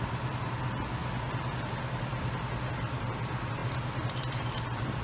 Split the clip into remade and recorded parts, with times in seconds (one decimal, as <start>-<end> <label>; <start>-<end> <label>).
0.0-5.0 recorded

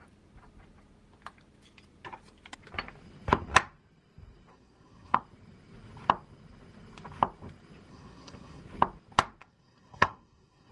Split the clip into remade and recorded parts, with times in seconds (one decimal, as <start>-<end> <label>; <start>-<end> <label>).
0.0-4.5 recorded; 4.5-5.2 remade; 5.2-7.9 recorded; 7.9-8.6 remade; 8.6-9.4 recorded; 9.4-10.7 remade

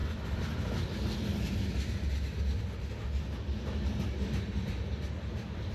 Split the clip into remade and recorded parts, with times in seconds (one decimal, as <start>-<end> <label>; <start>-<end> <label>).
0.0-5.7 recorded

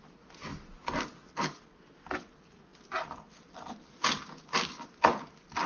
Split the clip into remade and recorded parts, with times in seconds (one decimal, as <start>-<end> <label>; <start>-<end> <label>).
0.0-5.7 recorded

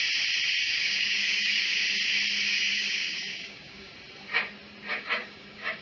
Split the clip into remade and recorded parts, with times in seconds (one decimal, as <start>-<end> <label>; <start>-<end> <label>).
0.0-0.6 recorded; 0.6-1.8 remade; 1.8-2.5 recorded; 2.5-3.9 remade; 3.9-4.9 recorded; 4.9-5.8 remade

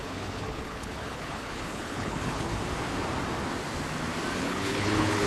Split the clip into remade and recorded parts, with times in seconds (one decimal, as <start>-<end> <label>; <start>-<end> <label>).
0.0-2.5 remade; 2.5-4.4 recorded; 4.4-5.3 remade

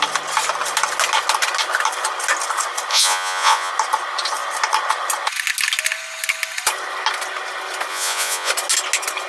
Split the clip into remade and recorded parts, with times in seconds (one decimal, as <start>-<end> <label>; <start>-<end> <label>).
0.0-2.9 recorded; 2.9-3.7 remade; 3.7-7.9 recorded; 7.9-8.5 remade; 8.5-9.3 recorded

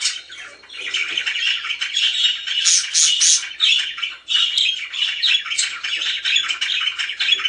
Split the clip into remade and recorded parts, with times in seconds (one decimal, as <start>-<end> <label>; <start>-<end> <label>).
0.0-7.5 recorded